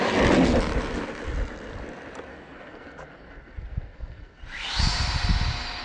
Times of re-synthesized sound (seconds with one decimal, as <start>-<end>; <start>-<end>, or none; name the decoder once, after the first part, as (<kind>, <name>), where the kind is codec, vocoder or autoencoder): 2.3-4.4 (codec, SNAC)